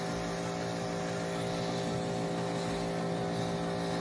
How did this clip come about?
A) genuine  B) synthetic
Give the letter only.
A